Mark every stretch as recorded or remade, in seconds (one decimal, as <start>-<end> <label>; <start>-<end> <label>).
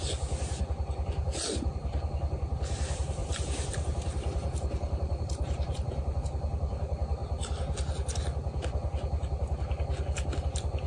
0.0-3.2 recorded; 3.2-6.2 remade; 6.2-10.9 recorded